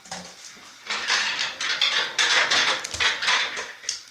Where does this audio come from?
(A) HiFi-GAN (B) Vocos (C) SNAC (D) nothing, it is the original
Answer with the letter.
D